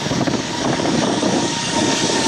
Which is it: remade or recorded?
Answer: remade